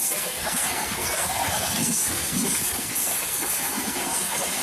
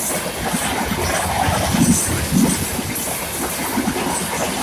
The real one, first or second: second